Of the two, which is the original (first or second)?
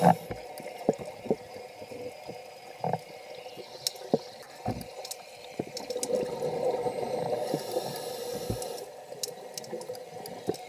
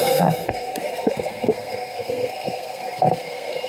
first